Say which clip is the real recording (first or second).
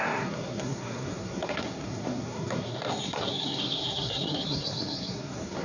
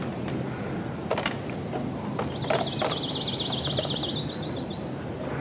second